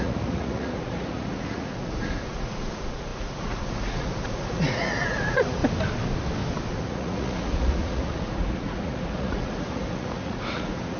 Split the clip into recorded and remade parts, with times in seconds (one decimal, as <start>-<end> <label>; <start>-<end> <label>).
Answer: 0.0-5.6 remade; 5.6-6.7 recorded; 6.7-11.0 remade